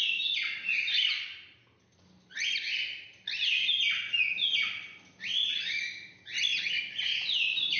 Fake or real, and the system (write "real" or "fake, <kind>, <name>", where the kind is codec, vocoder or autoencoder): real